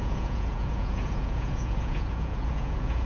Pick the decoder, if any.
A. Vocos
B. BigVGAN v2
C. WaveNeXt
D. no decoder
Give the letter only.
A